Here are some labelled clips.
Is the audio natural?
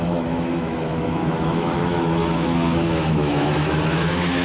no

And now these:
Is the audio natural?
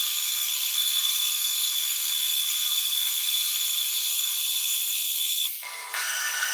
no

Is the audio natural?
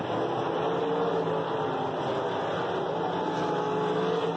yes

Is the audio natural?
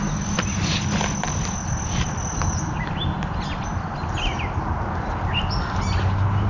yes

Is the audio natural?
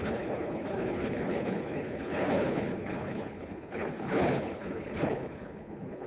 no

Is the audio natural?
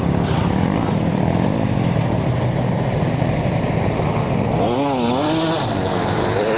yes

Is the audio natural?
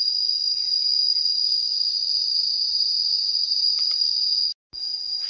yes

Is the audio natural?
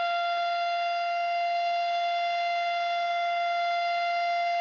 yes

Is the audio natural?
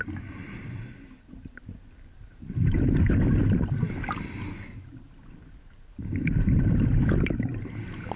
yes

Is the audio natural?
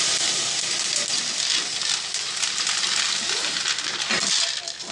yes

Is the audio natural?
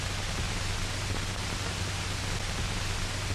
yes